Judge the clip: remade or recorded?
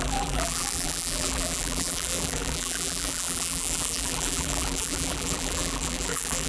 remade